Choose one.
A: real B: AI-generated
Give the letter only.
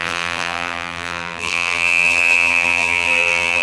B